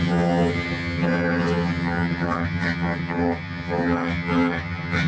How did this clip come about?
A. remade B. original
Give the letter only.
A